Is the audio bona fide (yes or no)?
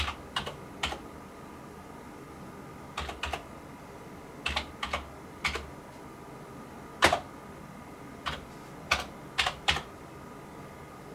yes